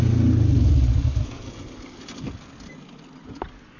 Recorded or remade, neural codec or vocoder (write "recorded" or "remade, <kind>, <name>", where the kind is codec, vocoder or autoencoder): recorded